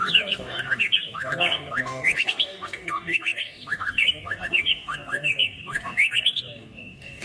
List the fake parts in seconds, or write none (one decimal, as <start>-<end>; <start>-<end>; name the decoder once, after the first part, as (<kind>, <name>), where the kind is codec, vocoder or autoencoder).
0.0-7.2 (codec, DAC)